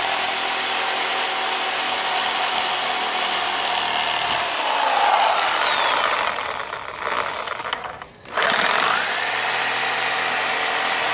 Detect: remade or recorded recorded